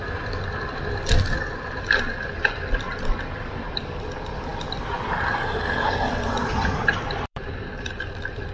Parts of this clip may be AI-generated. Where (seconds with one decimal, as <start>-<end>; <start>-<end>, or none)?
4.5-7.7